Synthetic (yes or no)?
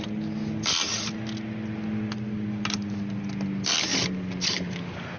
no